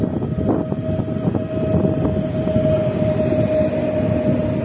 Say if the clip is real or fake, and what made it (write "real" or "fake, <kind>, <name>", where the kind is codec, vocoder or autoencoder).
real